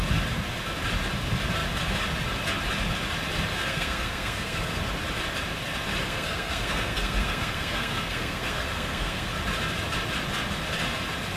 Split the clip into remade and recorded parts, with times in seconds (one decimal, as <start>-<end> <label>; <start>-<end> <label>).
0.0-3.5 recorded; 3.5-4.8 remade; 4.8-6.0 recorded; 6.0-9.3 remade; 9.3-11.4 recorded

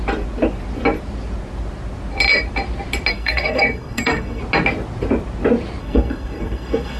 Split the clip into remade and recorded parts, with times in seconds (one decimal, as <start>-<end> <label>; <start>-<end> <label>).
0.0-3.1 recorded; 3.1-4.4 remade; 4.4-5.8 recorded; 5.8-7.0 remade

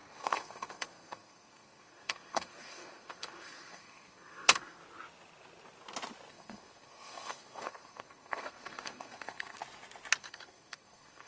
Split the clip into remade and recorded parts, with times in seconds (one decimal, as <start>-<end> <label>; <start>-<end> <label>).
0.0-4.8 remade; 4.8-6.3 recorded; 6.3-9.6 remade; 9.6-10.2 recorded; 10.2-11.3 remade

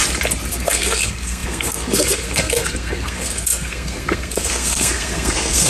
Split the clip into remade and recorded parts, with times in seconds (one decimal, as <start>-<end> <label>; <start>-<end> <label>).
0.0-0.5 recorded; 0.5-5.7 remade

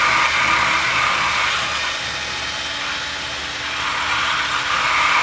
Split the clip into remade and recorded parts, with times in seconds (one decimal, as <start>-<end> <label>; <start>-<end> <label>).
0.0-5.2 recorded

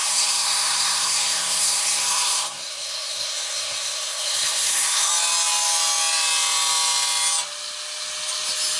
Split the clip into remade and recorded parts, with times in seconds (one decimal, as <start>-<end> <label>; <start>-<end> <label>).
0.0-5.1 remade; 5.1-8.8 recorded

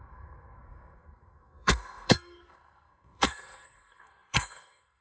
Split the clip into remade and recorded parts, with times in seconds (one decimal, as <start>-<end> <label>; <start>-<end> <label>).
0.0-5.0 remade

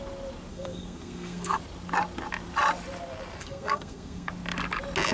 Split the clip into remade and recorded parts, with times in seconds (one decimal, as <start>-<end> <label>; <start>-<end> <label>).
0.0-0.5 recorded; 0.5-1.6 remade; 1.6-3.4 recorded; 3.4-4.3 remade; 4.3-5.1 recorded